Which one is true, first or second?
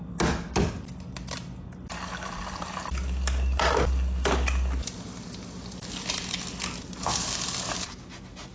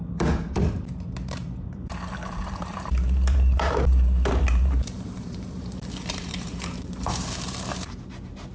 first